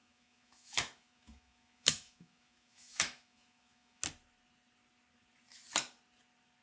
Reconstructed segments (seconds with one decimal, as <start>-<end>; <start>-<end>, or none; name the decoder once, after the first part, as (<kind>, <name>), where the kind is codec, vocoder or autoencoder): 0.0-4.0 (autoencoder, DAC-VAE)